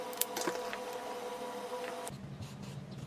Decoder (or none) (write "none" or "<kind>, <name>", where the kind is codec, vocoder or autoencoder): none